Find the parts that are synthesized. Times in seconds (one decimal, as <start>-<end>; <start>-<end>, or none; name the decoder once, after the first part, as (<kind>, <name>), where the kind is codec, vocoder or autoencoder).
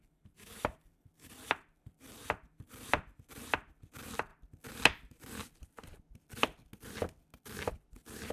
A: none